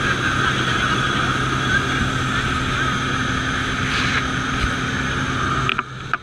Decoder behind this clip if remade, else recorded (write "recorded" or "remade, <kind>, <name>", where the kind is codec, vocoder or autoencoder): recorded